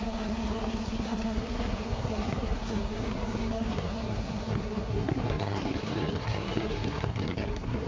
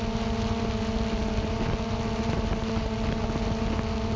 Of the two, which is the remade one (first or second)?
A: first